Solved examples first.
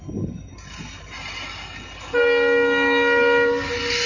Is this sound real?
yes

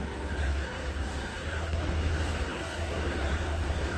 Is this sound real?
no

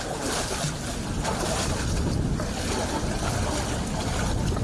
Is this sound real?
yes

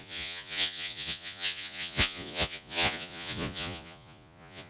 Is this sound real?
no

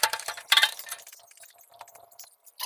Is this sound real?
no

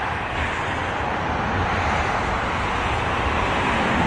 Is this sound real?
yes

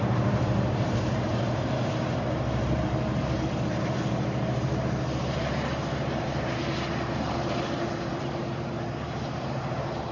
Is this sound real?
no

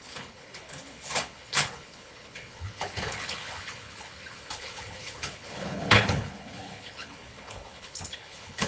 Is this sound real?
no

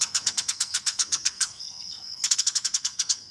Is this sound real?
no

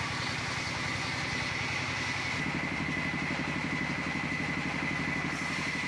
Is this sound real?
yes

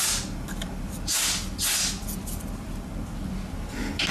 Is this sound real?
yes